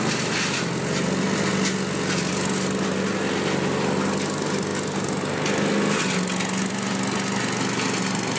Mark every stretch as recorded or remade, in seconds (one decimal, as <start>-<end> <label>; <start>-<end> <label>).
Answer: 0.0-8.4 recorded

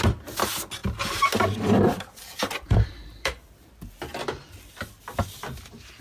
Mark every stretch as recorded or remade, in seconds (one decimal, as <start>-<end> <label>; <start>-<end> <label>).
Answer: 0.0-0.8 recorded; 0.8-3.7 remade; 3.7-6.0 recorded

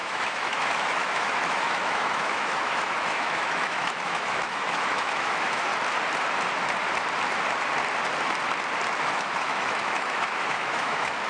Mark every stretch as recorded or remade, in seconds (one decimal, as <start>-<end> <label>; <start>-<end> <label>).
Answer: 0.0-5.7 remade; 5.7-9.0 recorded; 9.0-11.3 remade

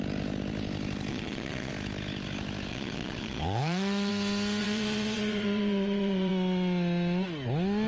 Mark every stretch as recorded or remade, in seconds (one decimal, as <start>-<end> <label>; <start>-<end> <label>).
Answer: 0.0-1.1 recorded; 1.1-1.7 remade; 1.7-2.7 recorded; 2.7-4.1 remade; 4.1-4.6 recorded; 4.6-6.3 remade; 6.3-7.9 recorded